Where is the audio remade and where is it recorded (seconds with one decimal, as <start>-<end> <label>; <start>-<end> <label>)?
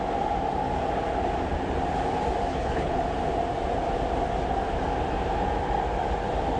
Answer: 0.0-2.5 recorded; 2.5-3.0 remade; 3.0-6.6 recorded